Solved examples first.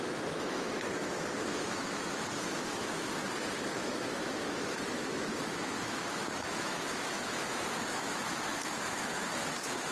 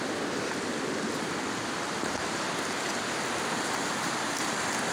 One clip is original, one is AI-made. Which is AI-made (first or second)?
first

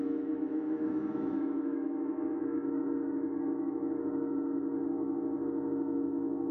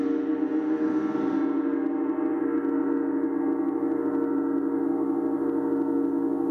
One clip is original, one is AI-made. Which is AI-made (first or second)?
first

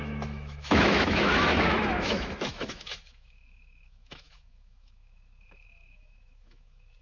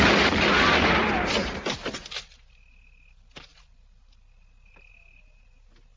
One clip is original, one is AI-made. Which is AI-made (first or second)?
first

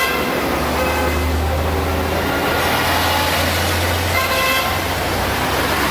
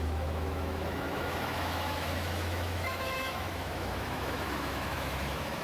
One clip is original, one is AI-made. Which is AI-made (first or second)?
second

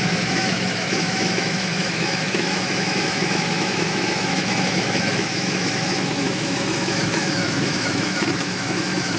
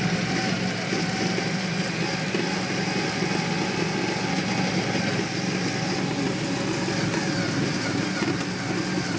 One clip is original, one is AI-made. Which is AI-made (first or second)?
first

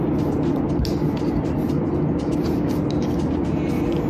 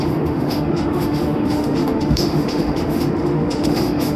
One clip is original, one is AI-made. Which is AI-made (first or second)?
second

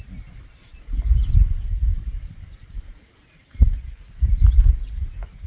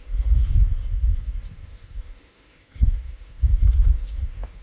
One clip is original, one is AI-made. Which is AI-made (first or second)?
second